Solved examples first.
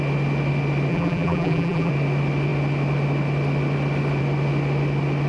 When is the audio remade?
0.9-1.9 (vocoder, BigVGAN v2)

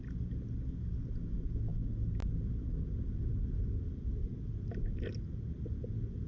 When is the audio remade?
none

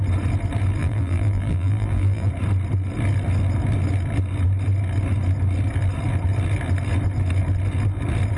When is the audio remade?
0.8-2.3 (vocoder, BigVGAN v2)

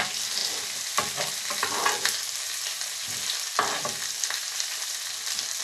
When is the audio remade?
none